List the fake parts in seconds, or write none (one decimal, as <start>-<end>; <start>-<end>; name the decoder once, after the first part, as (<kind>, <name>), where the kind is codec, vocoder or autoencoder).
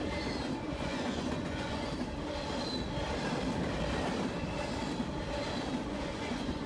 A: 0.6-1.9 (vocoder, Vocos); 5.9-6.7